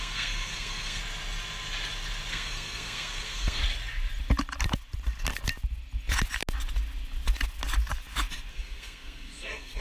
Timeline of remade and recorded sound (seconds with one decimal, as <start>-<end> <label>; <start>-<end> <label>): 0.0-1.0 remade; 1.0-2.3 recorded; 2.3-3.6 remade; 3.6-8.5 recorded; 8.5-9.8 remade